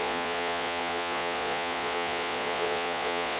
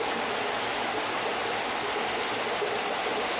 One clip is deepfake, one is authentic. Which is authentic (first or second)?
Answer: second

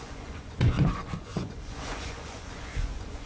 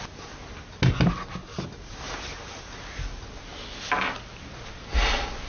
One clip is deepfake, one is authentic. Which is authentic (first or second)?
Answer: second